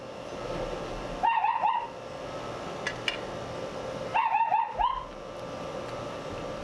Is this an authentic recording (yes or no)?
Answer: yes